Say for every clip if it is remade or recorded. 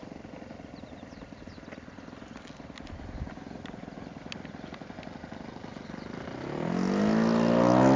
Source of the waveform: recorded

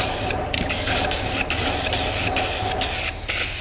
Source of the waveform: recorded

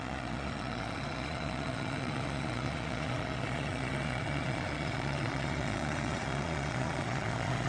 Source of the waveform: remade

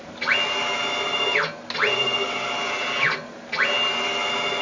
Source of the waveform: recorded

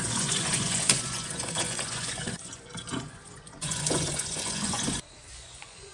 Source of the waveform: remade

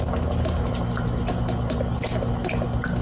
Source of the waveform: recorded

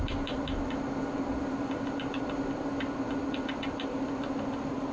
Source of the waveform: recorded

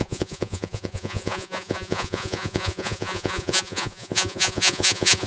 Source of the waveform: remade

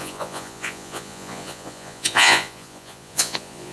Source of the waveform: remade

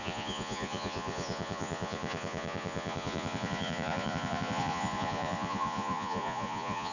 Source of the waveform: remade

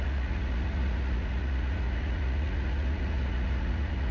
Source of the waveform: remade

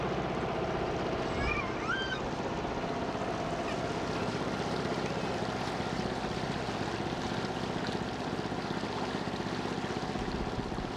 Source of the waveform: recorded